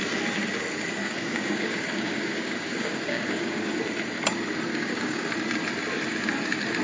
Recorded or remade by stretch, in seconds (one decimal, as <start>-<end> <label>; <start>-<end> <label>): 0.0-1.0 recorded; 1.0-3.7 remade; 3.7-4.7 recorded; 4.7-5.3 remade; 5.3-6.8 recorded